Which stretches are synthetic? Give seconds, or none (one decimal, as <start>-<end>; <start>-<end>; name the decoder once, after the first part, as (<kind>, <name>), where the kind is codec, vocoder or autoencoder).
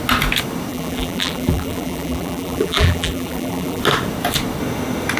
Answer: 0.7-3.8 (vocoder, BigVGAN v2)